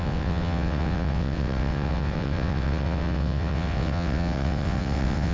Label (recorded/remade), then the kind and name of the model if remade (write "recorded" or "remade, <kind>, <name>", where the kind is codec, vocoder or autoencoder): remade, vocoder, WaveNeXt